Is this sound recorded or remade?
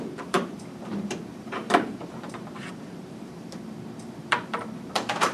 remade